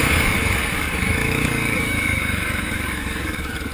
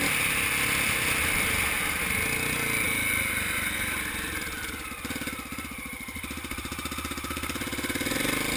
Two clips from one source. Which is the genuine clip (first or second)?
second